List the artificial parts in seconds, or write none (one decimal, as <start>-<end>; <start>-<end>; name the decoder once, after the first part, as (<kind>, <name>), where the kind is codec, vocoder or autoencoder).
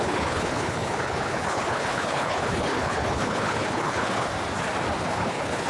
0.0-4.3 (codec, HILCodec); 5.0-5.7